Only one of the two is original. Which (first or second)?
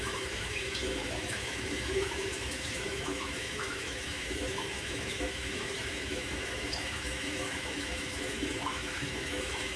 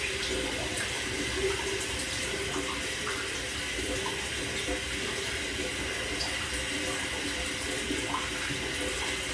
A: second